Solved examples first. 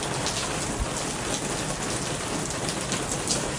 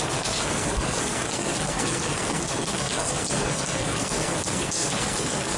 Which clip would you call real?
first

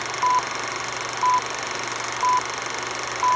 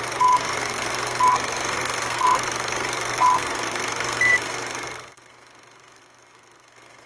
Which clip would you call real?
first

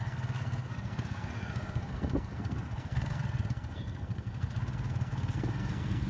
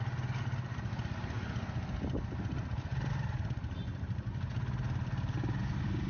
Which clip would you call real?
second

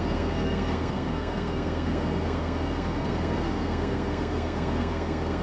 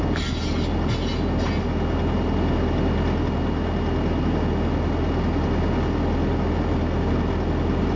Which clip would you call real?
second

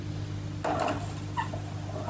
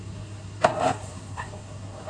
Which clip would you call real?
first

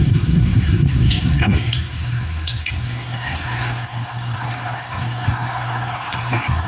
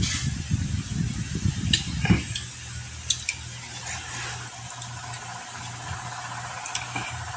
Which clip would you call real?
second